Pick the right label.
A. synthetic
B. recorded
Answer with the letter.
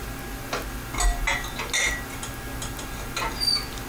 B